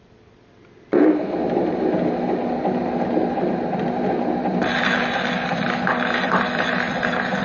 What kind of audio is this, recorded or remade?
recorded